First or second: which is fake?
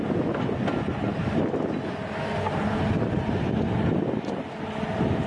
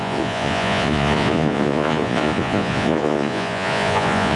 second